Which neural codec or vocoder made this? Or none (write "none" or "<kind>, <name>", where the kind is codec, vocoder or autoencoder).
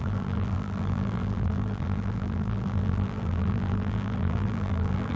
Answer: vocoder, BigVGAN v2